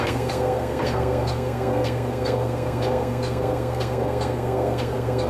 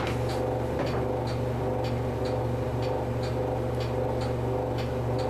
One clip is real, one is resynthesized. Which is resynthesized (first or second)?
first